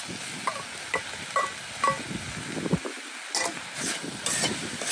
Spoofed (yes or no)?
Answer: no